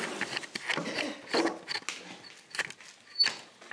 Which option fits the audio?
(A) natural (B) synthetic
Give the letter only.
A